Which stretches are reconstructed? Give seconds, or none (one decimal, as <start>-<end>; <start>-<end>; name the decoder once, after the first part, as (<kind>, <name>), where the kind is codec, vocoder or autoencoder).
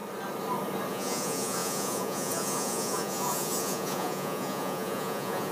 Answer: 0.9-5.5 (vocoder, Vocos)